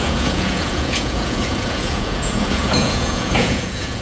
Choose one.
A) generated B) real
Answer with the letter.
A